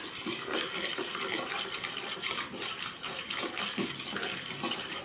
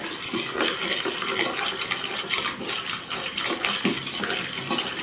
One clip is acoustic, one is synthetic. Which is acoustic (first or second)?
second